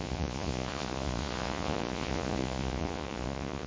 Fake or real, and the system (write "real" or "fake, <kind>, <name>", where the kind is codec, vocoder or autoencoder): fake, vocoder, Vocos